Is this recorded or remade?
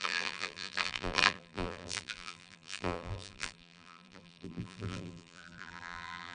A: remade